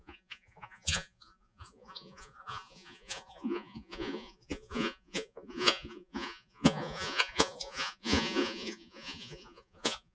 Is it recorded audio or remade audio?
remade